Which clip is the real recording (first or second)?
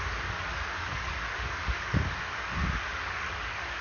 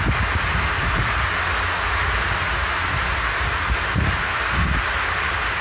second